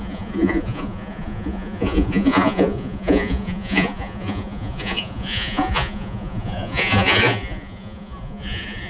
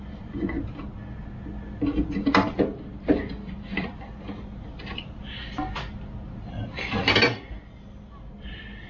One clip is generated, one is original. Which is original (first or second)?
second